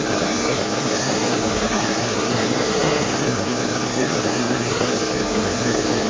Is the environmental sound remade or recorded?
remade